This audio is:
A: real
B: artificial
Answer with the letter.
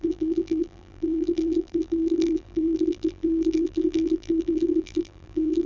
B